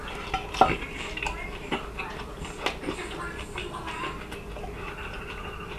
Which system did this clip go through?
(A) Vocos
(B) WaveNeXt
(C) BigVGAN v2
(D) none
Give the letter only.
D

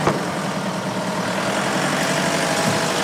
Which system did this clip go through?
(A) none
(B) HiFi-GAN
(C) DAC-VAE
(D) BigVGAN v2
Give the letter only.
A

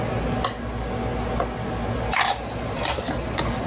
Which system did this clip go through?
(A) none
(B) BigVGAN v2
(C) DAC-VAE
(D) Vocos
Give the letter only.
A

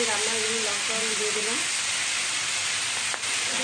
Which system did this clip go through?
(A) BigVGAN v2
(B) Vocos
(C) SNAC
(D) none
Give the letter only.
D